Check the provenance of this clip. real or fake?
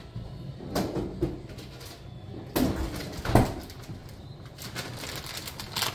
real